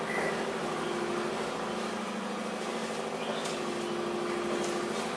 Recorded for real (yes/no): yes